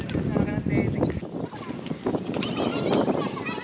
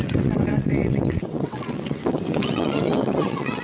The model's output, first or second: second